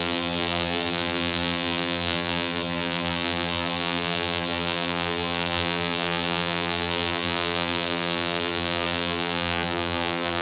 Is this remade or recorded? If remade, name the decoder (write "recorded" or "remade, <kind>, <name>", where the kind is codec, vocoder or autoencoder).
remade, vocoder, BigVGAN v2